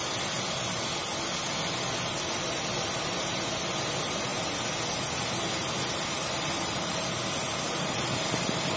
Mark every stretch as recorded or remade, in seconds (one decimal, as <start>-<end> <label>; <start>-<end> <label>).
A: 0.0-8.8 recorded